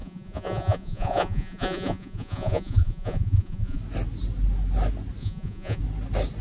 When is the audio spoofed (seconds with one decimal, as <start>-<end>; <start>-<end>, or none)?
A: 0.0-3.8; 5.2-5.8